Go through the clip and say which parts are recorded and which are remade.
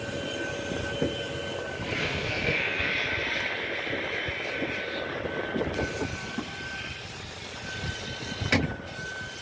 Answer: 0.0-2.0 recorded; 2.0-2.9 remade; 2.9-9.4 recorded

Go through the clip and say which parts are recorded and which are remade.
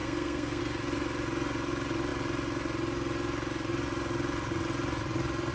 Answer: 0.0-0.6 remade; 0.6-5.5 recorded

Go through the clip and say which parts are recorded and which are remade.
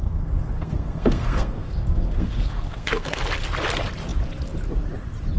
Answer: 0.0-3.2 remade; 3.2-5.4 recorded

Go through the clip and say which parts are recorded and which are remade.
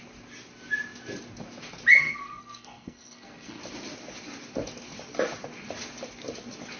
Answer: 0.0-2.0 recorded; 2.0-3.6 remade; 3.6-6.8 recorded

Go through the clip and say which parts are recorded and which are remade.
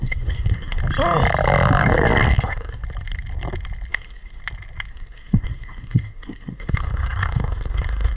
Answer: 0.0-0.8 remade; 0.8-2.4 recorded; 2.4-2.8 remade; 2.8-3.9 recorded; 3.9-4.4 remade; 4.4-4.9 recorded; 4.9-8.2 remade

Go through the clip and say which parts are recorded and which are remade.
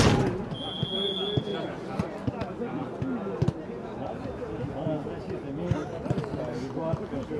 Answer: 0.0-7.4 recorded